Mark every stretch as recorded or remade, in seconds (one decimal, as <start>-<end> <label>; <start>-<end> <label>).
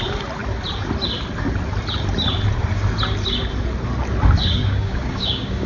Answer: 0.0-4.6 recorded; 4.6-5.7 remade